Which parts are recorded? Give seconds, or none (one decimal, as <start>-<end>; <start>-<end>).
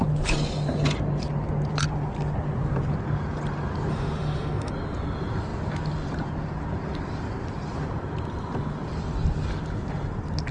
0.0-3.9; 4.7-10.5